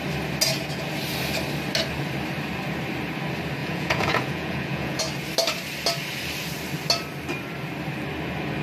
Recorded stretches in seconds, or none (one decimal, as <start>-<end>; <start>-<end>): 0.0-3.6; 5.0-8.6